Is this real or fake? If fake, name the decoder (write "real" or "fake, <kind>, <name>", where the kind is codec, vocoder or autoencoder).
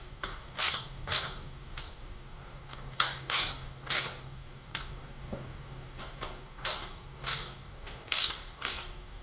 fake, codec, DAC